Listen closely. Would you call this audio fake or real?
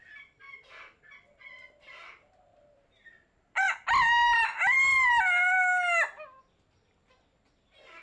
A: real